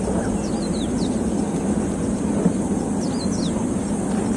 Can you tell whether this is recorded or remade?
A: recorded